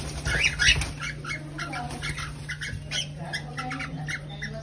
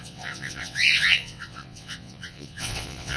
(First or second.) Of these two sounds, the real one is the first